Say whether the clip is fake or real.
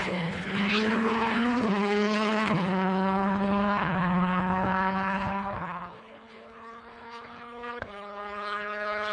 fake